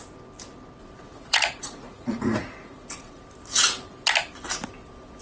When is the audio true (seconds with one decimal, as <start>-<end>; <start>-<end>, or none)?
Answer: 0.0-1.1; 3.2-5.2